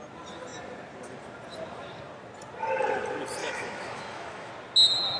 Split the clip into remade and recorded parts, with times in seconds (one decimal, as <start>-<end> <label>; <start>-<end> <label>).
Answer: 0.0-3.4 recorded; 3.4-4.5 remade; 4.5-5.2 recorded